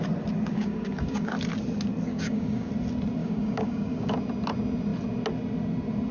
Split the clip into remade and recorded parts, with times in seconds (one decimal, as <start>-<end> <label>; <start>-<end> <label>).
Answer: 0.0-0.5 recorded; 0.5-1.3 remade; 1.3-2.1 recorded; 2.1-2.7 remade; 2.7-3.2 recorded; 3.2-4.1 remade; 4.1-6.1 recorded